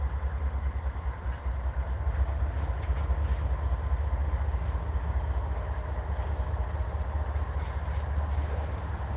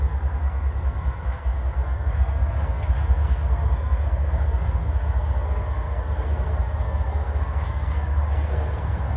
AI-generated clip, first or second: second